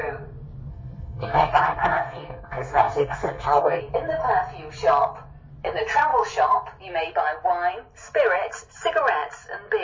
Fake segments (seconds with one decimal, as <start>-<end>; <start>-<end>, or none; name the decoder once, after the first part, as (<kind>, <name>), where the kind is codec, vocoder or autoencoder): 0.7-3.8 (codec, SNAC)